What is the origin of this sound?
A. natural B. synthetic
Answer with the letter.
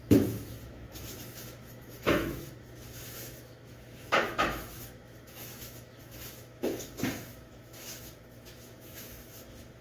B